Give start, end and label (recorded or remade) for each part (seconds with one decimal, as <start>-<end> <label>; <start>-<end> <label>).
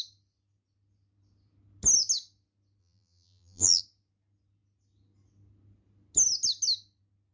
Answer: 0.0-2.8 recorded; 2.8-3.8 remade; 3.8-7.3 recorded